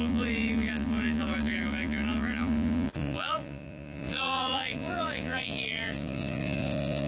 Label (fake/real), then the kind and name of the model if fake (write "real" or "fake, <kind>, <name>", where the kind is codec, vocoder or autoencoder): fake, vocoder, Vocos